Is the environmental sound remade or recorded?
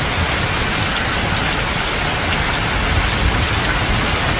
recorded